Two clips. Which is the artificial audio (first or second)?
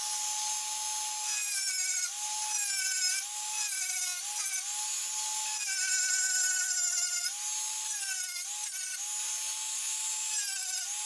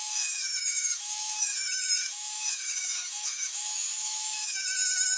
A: second